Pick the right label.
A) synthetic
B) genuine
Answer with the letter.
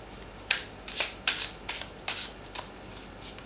B